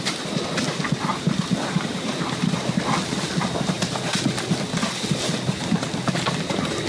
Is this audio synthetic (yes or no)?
no